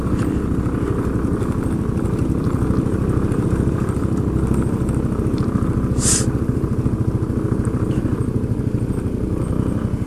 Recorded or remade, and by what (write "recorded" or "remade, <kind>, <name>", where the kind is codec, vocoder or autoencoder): recorded